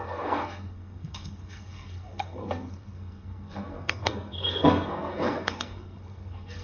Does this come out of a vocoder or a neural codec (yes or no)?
yes